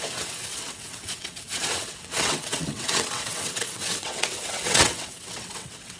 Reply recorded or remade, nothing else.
remade